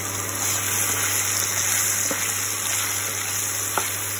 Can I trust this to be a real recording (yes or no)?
yes